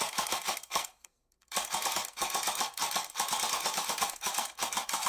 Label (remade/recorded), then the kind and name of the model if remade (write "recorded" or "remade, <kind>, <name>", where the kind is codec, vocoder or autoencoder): remade, codec, SNAC